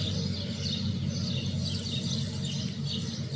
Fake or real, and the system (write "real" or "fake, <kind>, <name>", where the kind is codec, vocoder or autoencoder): real